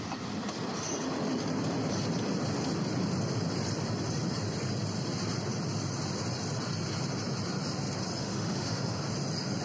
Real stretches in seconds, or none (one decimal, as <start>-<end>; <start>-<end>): 0.0-8.2; 9.0-9.6